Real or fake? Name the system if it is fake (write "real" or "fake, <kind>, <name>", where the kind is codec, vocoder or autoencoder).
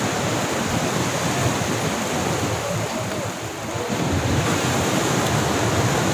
fake, vocoder, BigVGAN v2